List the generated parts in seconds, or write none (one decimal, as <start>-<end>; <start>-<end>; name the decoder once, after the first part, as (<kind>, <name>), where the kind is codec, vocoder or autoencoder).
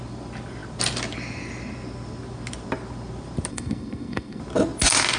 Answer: 3.5-4.4 (codec, SNAC)